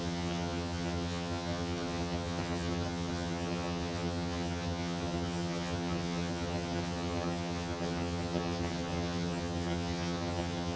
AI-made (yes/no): yes